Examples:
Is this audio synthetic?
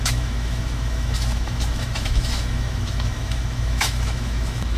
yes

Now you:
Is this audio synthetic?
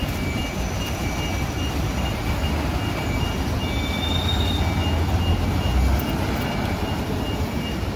no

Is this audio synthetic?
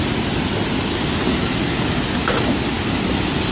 no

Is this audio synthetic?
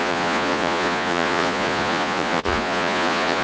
yes